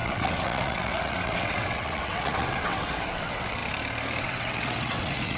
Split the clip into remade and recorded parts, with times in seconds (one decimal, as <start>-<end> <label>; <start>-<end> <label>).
0.0-3.6 remade; 3.6-4.2 recorded; 4.2-5.4 remade